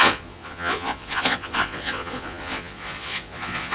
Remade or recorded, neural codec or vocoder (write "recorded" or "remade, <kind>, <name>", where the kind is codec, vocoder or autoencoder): remade, vocoder, Vocos